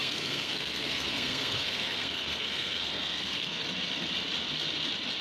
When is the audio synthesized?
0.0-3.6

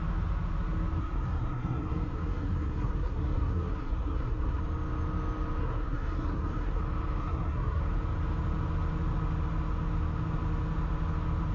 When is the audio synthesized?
1.0-4.6; 5.6-6.8; 7.2-7.8

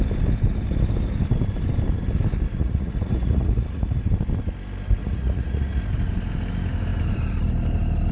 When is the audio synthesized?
2.6-4.1; 5.0-5.8

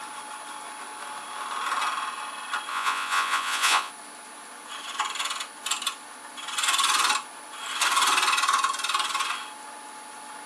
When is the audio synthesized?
2.7-3.9

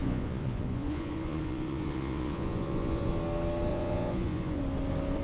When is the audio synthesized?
0.0-3.1; 3.7-4.6

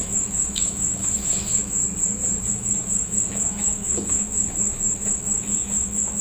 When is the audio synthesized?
0.0-1.8; 2.5-6.2

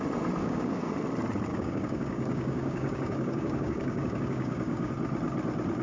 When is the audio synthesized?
0.4-0.9; 1.5-4.9